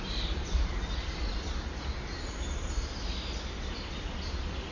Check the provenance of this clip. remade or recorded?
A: recorded